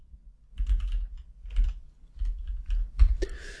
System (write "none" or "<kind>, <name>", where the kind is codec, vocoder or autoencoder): none